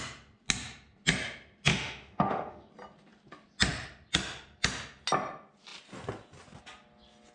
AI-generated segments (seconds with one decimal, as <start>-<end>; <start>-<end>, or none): 1.7-2.7